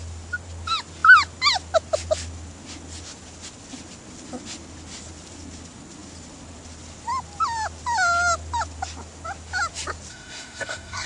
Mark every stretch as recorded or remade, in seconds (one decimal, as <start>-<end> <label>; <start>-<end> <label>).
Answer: 0.0-10.1 recorded; 10.1-11.1 remade